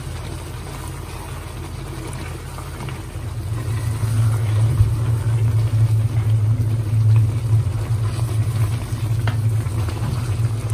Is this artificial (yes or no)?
no